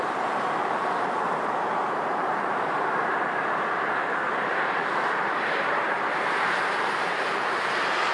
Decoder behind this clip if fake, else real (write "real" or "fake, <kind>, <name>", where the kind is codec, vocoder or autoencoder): fake, vocoder, BigVGAN v2